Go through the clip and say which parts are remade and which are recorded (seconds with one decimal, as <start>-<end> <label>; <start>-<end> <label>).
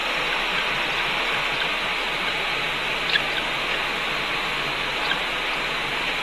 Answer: 0.0-6.2 recorded